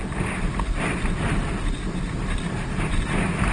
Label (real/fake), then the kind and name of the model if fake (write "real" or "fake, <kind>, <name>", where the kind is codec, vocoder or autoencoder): real